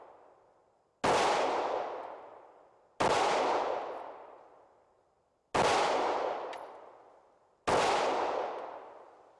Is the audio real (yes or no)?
yes